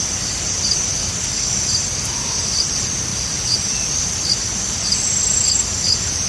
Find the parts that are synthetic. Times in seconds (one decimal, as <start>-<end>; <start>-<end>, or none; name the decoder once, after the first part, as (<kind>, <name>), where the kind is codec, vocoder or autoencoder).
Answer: none

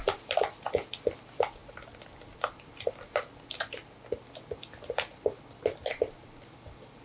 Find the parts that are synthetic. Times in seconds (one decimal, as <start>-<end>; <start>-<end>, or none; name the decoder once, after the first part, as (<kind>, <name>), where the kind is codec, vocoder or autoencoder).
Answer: none

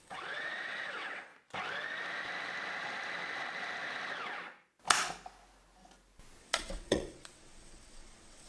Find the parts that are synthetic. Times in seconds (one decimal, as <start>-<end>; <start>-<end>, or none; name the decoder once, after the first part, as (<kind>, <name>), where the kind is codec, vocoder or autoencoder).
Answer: 0.0-1.3 (vocoder, WaveNeXt); 6.4-8.5

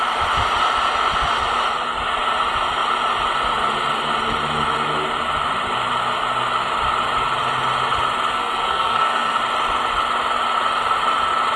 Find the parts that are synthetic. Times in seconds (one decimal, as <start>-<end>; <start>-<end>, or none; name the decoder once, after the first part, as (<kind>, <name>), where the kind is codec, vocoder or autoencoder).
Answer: 8.3-9.4 (codec, SNAC)

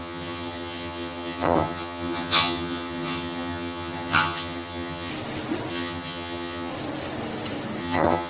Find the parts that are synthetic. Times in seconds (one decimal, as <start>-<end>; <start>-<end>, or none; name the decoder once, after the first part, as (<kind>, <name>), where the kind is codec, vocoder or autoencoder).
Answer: 0.0-5.1 (vocoder, HiFi-GAN); 5.7-6.7; 7.8-8.3